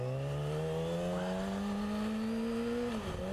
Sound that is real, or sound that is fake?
real